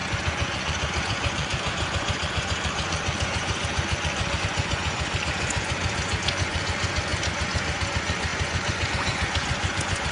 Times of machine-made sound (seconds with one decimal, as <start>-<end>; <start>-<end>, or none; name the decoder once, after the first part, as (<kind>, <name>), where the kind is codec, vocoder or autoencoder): 0.0-10.1 (vocoder, Vocos)